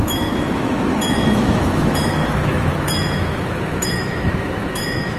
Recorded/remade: remade